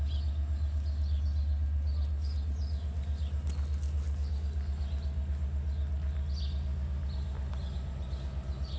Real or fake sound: real